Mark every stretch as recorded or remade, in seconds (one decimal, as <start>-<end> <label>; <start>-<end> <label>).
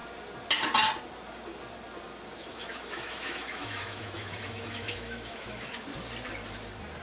0.0-2.5 recorded; 2.5-5.7 remade; 5.7-7.0 recorded